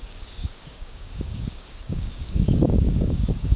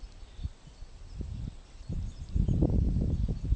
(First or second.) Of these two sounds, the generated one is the first